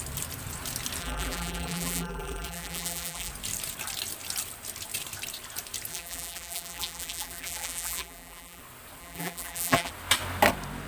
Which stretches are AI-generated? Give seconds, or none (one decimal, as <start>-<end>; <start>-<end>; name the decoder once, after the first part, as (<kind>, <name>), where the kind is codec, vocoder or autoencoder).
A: 1.0-3.3 (vocoder, BigVGAN v2); 5.9-8.6; 9.0-9.9